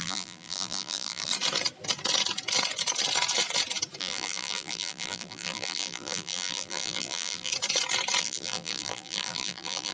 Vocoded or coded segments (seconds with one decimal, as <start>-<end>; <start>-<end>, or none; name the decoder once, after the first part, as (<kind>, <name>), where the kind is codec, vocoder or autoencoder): 0.0-1.3 (vocoder, BigVGAN v2); 4.0-7.5; 8.2-9.9